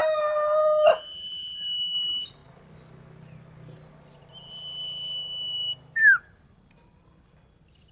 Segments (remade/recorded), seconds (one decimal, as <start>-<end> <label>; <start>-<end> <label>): 0.0-7.9 recorded